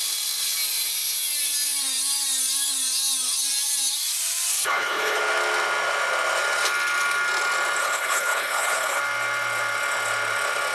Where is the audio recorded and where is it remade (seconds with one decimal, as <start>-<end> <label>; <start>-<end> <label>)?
0.0-4.5 recorded; 4.5-5.2 remade; 5.2-7.8 recorded; 7.8-9.0 remade; 9.0-10.7 recorded